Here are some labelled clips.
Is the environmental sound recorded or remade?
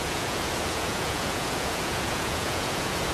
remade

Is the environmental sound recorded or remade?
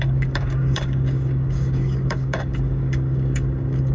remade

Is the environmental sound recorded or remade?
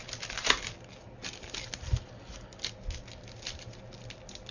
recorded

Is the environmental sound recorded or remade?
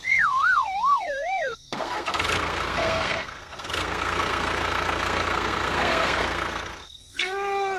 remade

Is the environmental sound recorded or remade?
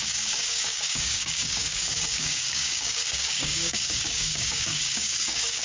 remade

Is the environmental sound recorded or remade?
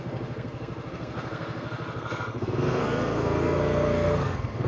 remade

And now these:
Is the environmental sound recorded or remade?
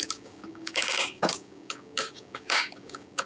remade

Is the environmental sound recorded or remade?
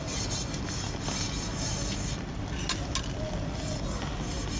recorded